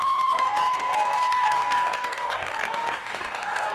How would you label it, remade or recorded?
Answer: remade